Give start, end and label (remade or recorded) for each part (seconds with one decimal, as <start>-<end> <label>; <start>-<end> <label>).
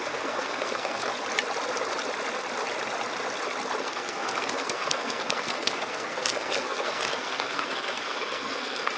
0.0-1.1 remade; 1.1-3.8 recorded; 3.8-9.0 remade